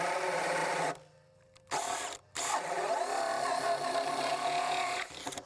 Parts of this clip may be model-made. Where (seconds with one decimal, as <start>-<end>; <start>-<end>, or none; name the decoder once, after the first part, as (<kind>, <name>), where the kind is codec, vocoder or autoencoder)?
4.3-5.1 (vocoder, Vocos)